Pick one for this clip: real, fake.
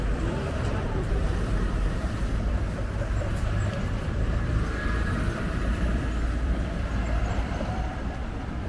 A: fake